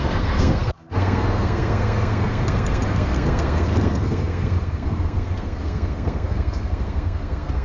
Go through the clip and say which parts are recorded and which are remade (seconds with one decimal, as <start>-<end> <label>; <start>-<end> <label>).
0.0-7.6 remade